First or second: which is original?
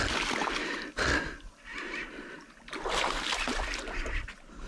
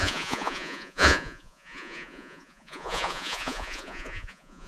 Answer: first